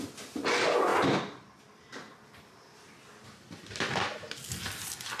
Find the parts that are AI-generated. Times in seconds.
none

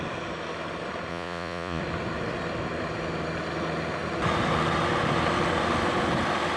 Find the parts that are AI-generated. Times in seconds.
1.1-1.8 (vocoder, Vocos)

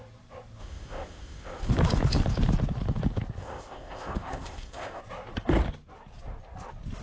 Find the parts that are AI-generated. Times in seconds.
0.6-1.7 (codec, ZipCodec); 3.4-5.0

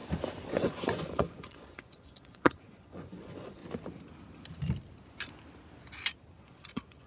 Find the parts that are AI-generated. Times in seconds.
0.5-3.6 (vocoder, Vocos); 6.4-7.1

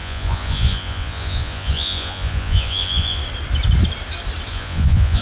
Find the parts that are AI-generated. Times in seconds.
0.0-3.2 (vocoder, Vocos); 4.5-5.2

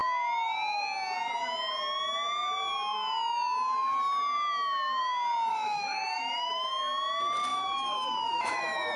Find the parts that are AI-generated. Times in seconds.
5.5-6.7 (autoencoder, DAC-VAE); 7.5-9.0

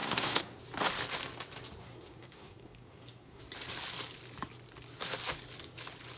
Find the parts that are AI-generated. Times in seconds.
0.0-0.6 (codec, SNAC); 1.8-3.4